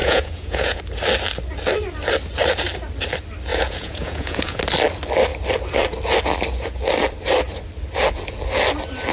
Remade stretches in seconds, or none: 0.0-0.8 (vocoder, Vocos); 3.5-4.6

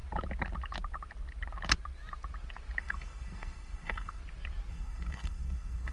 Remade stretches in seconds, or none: 2.8-4.2 (codec, SNAC); 4.7-5.9

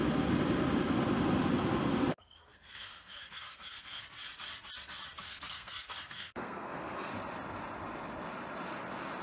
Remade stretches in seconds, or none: 2.1-4.0 (codec, SNAC); 5.1-7.1

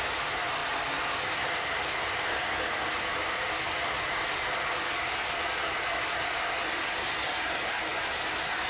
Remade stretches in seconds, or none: none